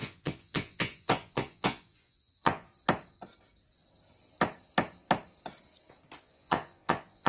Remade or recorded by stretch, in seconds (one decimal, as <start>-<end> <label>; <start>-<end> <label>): 0.0-2.7 remade; 2.7-6.2 recorded; 6.2-7.3 remade

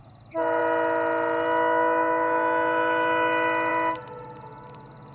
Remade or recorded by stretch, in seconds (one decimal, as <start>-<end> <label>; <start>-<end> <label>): 0.0-5.1 recorded